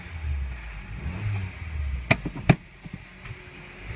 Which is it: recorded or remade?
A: recorded